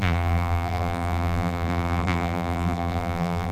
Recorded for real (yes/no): no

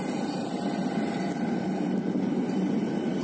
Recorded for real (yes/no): yes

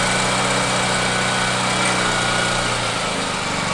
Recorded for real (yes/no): yes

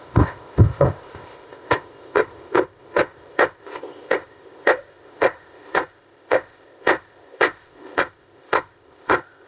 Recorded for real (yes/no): no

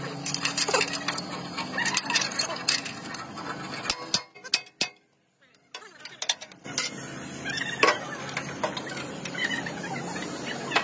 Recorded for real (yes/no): yes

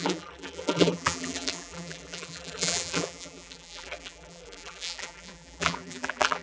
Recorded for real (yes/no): no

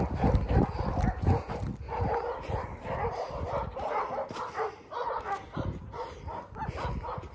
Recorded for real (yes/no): yes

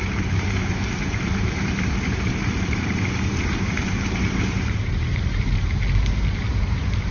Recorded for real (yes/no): no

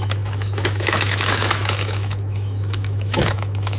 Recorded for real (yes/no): no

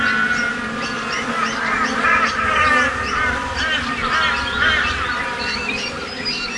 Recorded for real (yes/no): yes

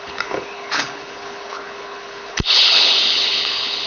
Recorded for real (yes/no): no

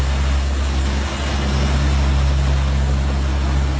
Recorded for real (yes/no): yes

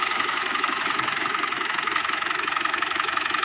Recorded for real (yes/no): no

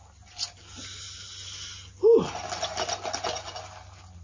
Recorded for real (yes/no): yes